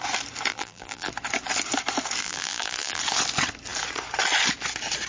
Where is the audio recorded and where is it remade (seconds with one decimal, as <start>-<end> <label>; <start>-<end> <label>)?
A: 0.0-0.5 recorded; 0.5-1.1 remade; 1.1-2.2 recorded; 2.2-3.0 remade; 3.0-5.1 recorded